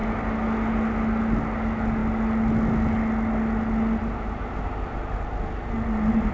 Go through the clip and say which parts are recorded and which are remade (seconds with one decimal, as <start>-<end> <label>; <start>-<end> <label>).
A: 0.0-6.3 recorded